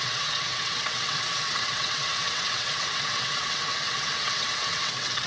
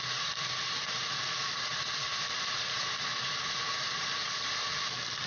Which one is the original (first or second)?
second